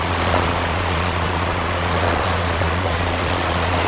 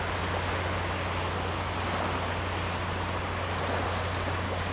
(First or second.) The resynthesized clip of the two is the first